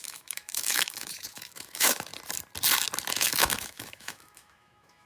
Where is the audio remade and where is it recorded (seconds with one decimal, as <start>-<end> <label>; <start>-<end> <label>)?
0.0-2.1 remade; 2.1-3.1 recorded; 3.1-5.1 remade